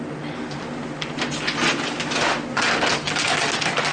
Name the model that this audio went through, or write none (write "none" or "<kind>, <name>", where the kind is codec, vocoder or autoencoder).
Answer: none